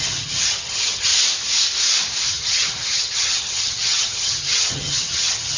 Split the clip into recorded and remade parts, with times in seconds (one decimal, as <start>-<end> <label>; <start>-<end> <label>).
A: 0.0-1.1 remade; 1.1-2.3 recorded; 2.3-5.6 remade